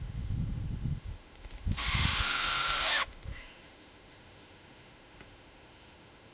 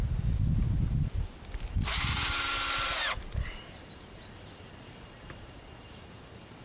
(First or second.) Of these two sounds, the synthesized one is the first